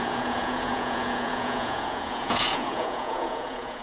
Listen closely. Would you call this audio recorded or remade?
remade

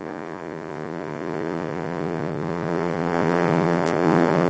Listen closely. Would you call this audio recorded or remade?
remade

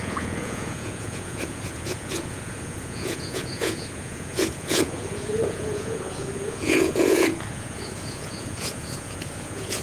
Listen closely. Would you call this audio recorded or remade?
remade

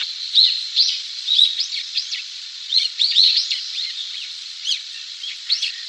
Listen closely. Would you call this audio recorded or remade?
remade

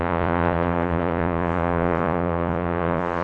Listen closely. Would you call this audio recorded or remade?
remade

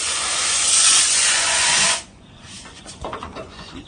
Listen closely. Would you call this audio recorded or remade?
remade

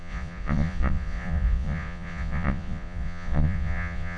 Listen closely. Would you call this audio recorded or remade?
remade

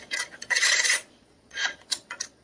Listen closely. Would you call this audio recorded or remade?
remade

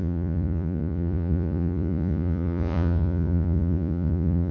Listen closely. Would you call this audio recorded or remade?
remade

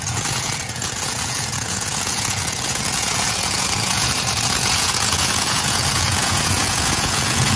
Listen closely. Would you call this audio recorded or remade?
remade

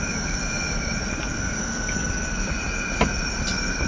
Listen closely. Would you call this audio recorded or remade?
recorded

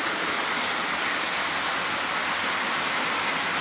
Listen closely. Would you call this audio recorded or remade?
recorded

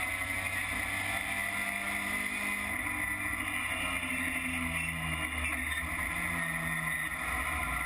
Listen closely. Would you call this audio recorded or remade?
recorded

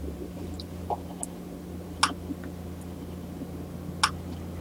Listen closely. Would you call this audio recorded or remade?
recorded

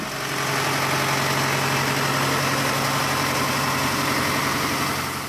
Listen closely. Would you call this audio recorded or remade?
recorded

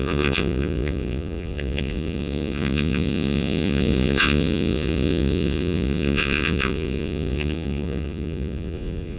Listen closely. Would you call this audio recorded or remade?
remade